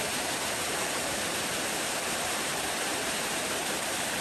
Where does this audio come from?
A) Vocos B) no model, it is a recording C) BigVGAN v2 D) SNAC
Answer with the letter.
C